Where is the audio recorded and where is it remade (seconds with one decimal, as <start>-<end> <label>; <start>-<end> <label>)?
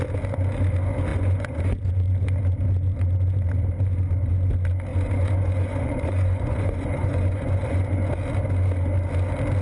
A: 0.0-1.1 recorded; 1.1-1.8 remade; 1.8-4.9 recorded; 4.9-8.1 remade; 8.1-9.6 recorded